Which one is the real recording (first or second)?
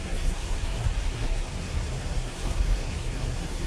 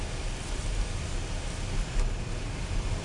second